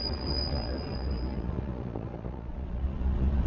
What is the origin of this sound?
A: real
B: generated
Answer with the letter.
B